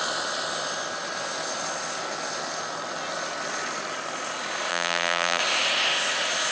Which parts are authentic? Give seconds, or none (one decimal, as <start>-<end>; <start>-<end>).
0.0-4.7; 5.4-6.5

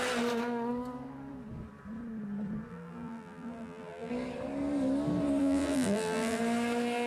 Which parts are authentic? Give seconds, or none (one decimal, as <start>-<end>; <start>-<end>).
0.0-2.7; 4.1-5.4; 6.4-7.1